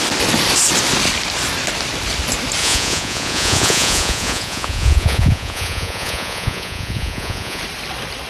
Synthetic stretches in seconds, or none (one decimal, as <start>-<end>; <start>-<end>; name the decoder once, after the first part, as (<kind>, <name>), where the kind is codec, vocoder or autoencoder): 2.6-7.6 (vocoder, Vocos)